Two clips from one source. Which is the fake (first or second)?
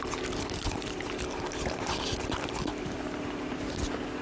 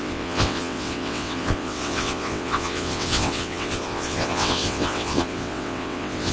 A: second